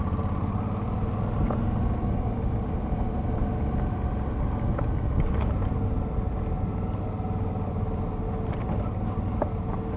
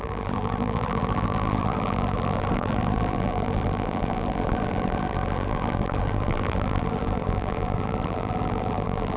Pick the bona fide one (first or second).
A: first